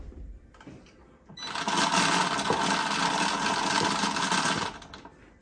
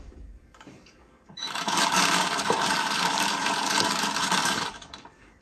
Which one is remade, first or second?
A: second